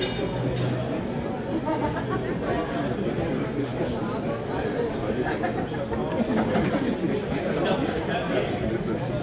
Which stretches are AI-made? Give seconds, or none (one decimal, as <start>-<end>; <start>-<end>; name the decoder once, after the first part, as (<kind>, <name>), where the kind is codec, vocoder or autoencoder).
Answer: none